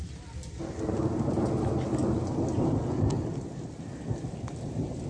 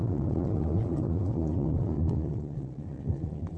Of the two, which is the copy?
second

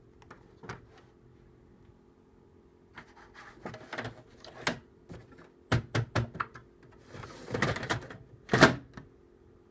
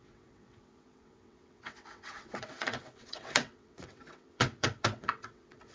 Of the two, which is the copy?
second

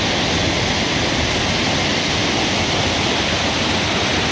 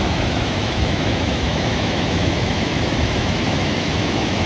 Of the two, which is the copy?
second